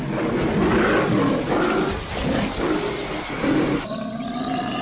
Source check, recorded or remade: recorded